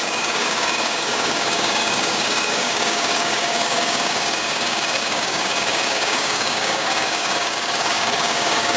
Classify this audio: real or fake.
fake